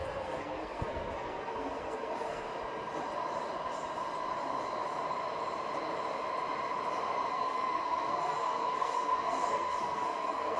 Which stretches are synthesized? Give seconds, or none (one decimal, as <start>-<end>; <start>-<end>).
0.0-2.5; 7.3-10.6